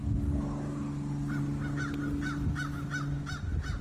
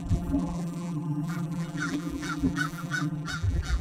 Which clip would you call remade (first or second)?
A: second